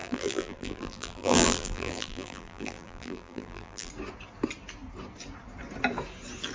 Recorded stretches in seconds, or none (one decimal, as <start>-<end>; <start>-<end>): 3.9-6.5